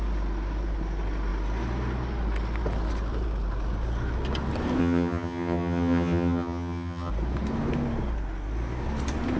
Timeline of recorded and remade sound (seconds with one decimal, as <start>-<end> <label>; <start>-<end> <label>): 0.0-4.8 recorded; 4.8-7.1 remade; 7.1-9.4 recorded